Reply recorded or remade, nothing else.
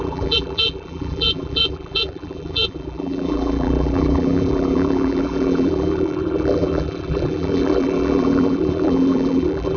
remade